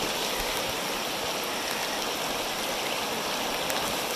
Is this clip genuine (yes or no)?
yes